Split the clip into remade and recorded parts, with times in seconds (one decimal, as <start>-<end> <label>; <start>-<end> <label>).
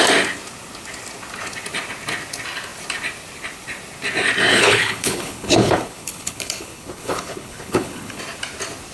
0.0-4.5 recorded; 4.5-8.2 remade; 8.2-8.9 recorded